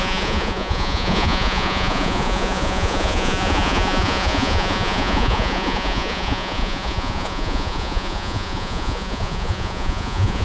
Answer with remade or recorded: remade